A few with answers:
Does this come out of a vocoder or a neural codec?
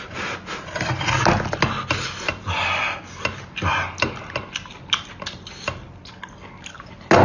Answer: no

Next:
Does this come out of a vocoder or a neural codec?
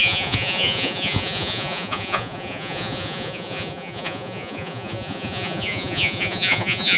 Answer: yes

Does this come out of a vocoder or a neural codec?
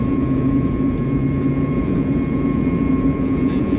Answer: yes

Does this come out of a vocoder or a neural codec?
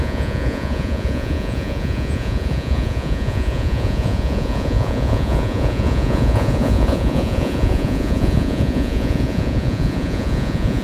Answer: yes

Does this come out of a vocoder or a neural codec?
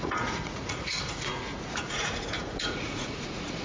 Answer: yes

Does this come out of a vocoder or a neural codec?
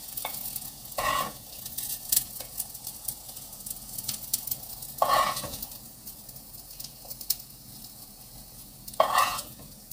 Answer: yes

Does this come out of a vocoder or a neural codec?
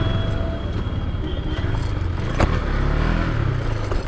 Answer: no